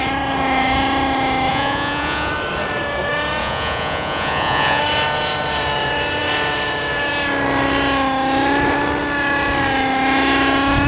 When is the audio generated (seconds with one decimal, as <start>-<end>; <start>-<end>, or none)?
1.5-2.3; 3.4-4.8